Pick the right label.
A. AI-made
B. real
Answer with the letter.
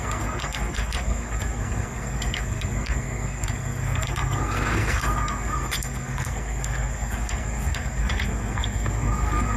A